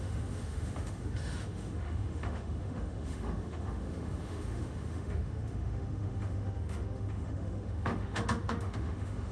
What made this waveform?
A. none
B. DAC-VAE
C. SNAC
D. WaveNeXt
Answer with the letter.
B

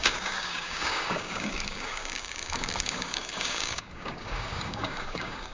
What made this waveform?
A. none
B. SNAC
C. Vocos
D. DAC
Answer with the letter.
D